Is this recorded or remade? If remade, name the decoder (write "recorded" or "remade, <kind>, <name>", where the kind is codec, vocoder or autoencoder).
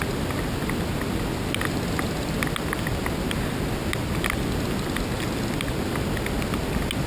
recorded